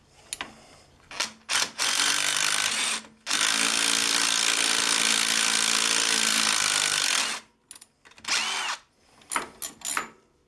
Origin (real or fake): real